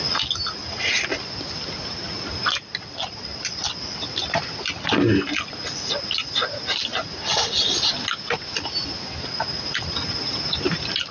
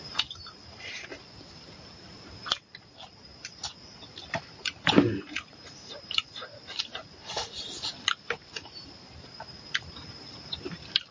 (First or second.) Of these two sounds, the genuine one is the first